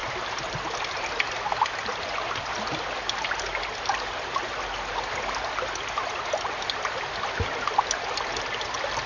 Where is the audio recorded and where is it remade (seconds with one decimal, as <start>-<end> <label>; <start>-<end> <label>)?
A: 0.0-9.1 recorded